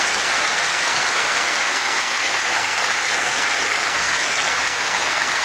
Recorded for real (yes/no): no